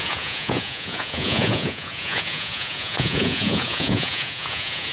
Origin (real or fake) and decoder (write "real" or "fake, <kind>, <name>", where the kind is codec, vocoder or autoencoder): fake, vocoder, Vocos